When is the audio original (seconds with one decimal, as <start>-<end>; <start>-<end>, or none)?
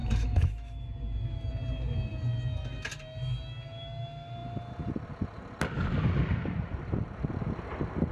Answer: 1.5-8.1